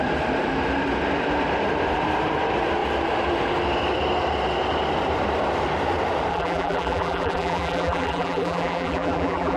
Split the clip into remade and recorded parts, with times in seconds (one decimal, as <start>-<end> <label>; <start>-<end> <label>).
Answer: 0.0-6.3 recorded; 6.3-9.6 remade